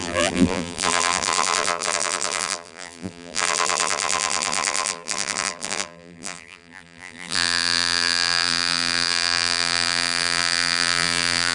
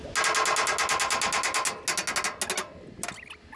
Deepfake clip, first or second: first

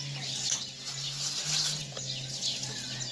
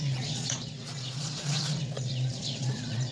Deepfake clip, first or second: second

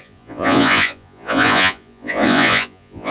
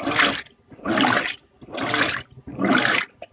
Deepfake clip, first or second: first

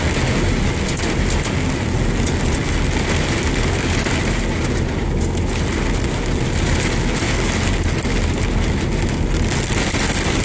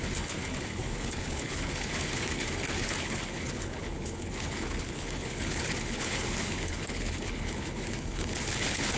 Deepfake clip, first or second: second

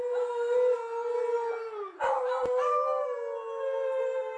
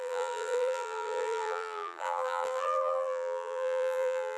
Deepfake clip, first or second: second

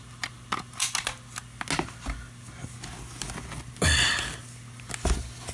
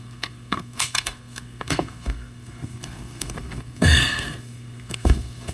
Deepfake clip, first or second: second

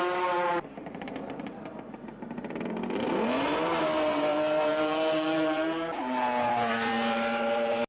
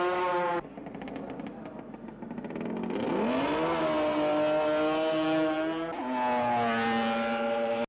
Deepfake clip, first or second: first